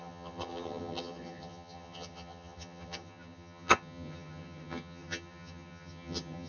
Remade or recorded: remade